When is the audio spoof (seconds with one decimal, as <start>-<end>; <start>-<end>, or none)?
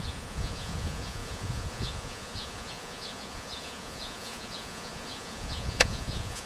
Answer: 0.0-6.5